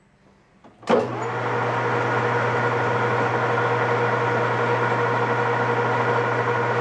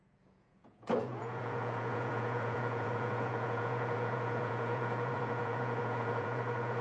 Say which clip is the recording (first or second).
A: first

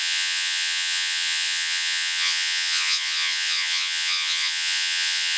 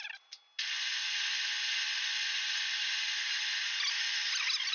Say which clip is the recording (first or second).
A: second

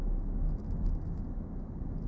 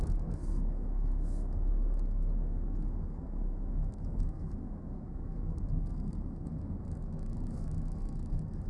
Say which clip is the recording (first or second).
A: first